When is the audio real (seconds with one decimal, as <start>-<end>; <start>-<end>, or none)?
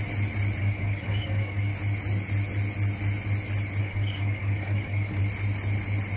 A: 0.0-0.6; 1.7-3.8; 5.2-6.2